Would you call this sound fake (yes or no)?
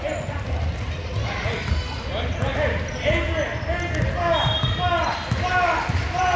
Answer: no